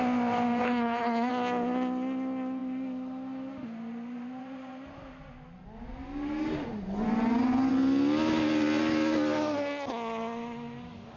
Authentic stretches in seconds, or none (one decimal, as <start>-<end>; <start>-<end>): 0.0-0.6; 1.3-11.2